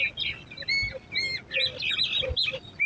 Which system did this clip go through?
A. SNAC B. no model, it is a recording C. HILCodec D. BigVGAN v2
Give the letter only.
B